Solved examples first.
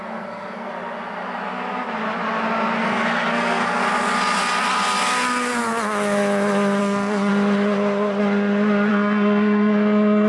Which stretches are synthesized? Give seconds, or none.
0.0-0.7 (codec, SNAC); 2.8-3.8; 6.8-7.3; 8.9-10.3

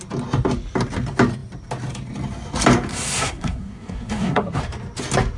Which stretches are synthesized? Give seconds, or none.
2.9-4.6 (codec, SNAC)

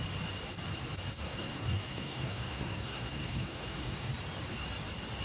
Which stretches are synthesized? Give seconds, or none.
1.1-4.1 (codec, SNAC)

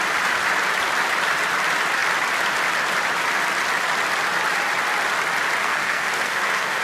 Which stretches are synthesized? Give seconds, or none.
5.6-6.8 (codec, SNAC)

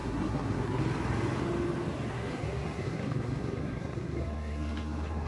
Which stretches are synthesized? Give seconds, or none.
0.0-0.8 (codec, SNAC); 2.1-5.3

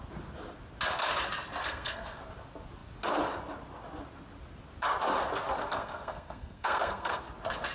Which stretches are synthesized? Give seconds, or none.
1.6-2.2 (codec, SNAC); 5.6-7.2

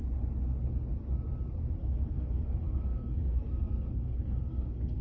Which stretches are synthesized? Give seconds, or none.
1.8-5.0 (codec, SNAC)

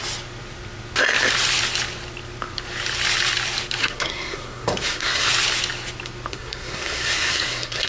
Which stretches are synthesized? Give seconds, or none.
3.8-5.3 (codec, SNAC); 6.3-7.9